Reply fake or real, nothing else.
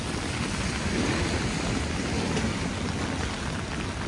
real